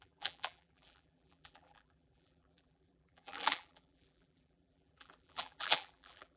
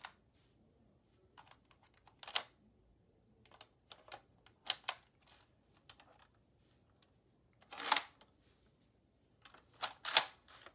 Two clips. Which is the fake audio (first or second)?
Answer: first